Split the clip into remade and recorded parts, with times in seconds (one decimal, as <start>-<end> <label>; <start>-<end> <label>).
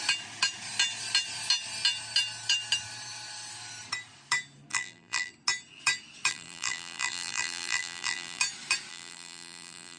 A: 0.0-4.7 recorded; 4.7-5.3 remade; 5.3-6.3 recorded; 6.3-8.4 remade; 8.4-8.9 recorded; 8.9-10.0 remade